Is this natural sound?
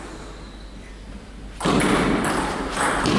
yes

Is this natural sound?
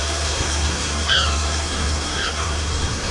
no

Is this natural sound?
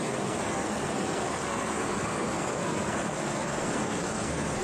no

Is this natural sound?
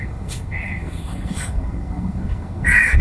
no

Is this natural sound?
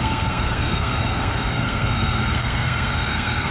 no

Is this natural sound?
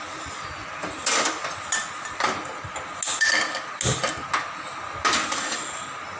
yes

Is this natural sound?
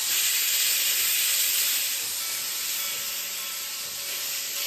yes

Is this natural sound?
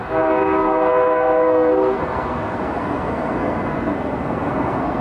no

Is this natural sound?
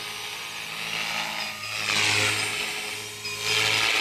yes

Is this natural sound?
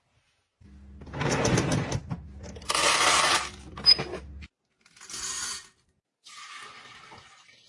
yes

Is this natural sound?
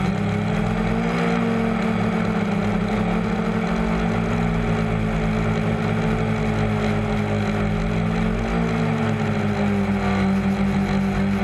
yes